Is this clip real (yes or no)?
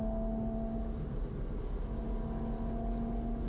yes